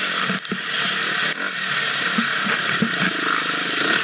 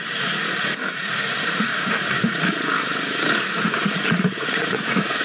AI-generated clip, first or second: second